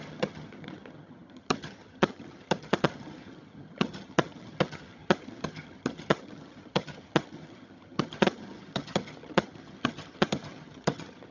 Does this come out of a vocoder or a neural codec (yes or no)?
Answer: yes